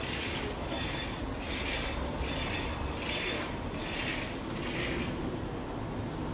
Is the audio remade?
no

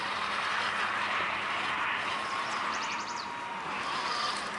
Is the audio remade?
yes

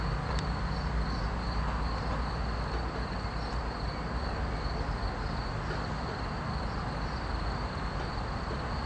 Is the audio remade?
no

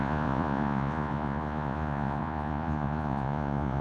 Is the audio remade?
yes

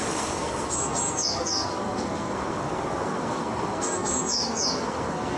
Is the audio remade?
yes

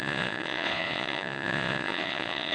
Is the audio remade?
yes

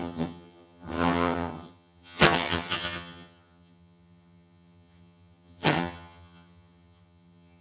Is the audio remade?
yes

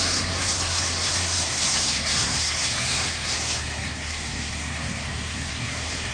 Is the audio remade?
yes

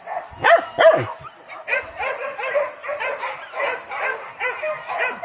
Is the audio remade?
no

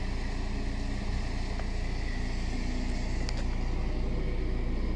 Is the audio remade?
no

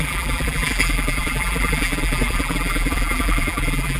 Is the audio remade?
yes